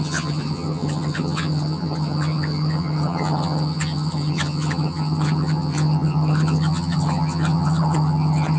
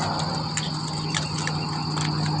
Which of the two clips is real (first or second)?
second